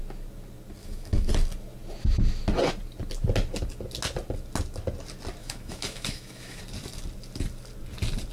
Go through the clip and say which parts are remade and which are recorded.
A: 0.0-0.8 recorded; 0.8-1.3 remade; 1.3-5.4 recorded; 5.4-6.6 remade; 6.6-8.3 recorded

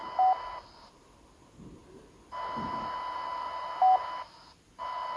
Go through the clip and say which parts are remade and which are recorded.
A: 0.0-5.2 recorded